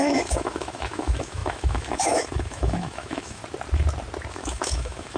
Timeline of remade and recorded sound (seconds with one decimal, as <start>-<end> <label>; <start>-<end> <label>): 0.0-3.4 remade; 3.4-4.3 recorded; 4.3-5.2 remade